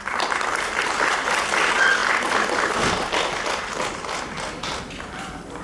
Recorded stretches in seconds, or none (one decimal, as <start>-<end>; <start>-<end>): 0.0-5.6